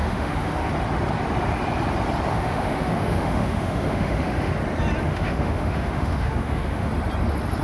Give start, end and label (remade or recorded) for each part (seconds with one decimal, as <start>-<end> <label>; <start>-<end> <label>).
0.0-0.7 remade; 0.7-2.3 recorded; 2.3-4.5 remade; 4.5-5.0 recorded; 5.0-6.9 remade; 6.9-7.6 recorded